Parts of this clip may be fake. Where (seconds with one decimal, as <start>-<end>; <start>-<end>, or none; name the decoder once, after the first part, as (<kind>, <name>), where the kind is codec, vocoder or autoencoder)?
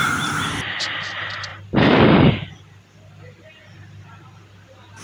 none